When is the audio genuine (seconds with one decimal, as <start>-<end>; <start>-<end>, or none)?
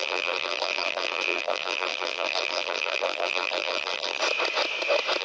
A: 4.2-5.2